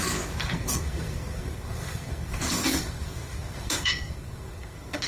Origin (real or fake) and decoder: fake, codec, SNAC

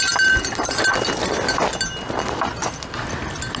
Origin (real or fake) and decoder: real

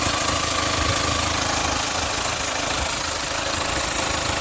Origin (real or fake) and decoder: real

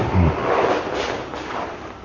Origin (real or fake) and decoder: real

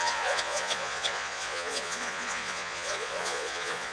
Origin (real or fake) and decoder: fake, vocoder, Vocos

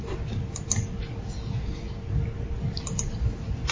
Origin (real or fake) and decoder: real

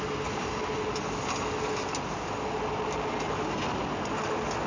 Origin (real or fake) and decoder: real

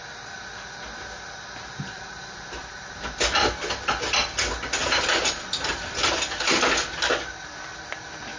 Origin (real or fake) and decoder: real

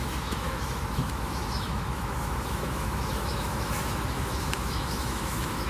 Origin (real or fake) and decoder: fake, autoencoder, DAC-VAE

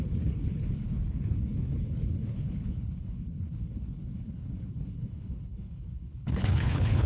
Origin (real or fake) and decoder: fake, codec, HILCodec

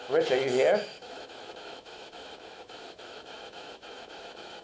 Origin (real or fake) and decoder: fake, autoencoder, DAC-VAE